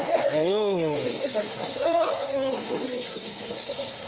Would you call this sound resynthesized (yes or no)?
yes